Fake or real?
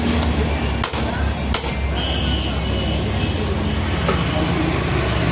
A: real